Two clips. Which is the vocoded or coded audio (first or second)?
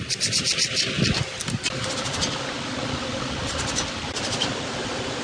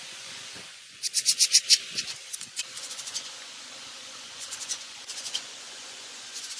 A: second